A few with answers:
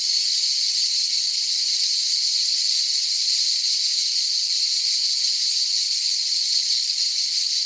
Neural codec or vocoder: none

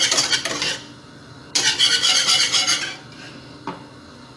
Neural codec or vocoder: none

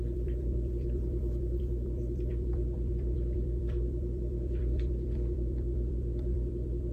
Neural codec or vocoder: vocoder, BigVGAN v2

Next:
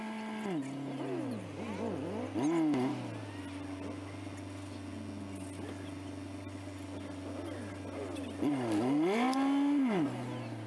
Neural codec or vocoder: none